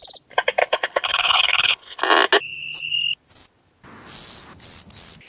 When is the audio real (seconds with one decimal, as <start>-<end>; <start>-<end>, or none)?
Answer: 0.0-0.6; 2.0-5.3